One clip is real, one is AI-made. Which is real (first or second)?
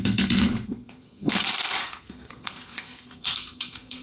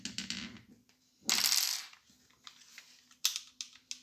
second